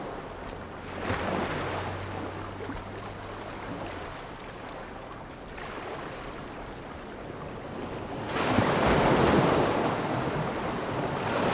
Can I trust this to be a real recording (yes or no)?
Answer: yes